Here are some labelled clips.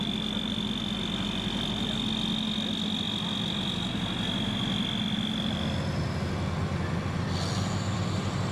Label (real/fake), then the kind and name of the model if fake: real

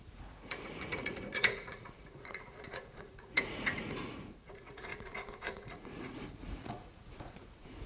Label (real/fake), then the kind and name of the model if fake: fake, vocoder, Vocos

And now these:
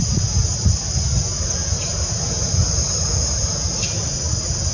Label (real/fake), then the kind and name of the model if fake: real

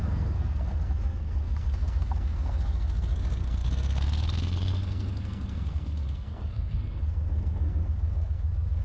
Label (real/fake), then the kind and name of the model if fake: fake, codec, SNAC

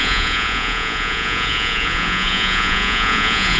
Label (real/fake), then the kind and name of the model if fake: fake, vocoder, Vocos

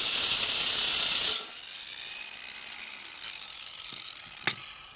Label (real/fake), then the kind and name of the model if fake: real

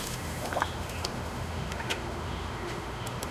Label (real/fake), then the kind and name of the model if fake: fake, autoencoder, DAC-VAE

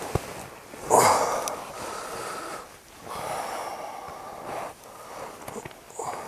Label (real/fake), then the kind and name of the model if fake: real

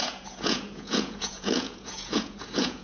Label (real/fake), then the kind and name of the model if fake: fake, vocoder, Vocos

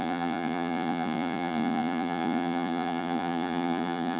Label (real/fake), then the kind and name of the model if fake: fake, vocoder, Vocos